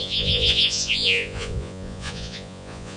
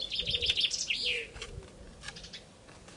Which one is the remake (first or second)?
first